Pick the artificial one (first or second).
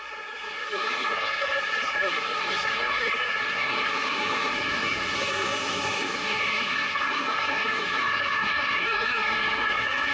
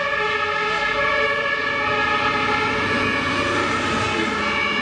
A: first